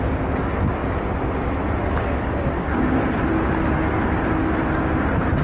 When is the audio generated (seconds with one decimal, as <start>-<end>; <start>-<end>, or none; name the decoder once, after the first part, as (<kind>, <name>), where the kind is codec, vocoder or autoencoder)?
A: none